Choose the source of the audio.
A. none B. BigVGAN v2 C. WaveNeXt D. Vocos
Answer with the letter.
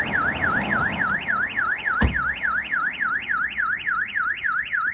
A